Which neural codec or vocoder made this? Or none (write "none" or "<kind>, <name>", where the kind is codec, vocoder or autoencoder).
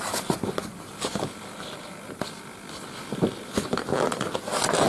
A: none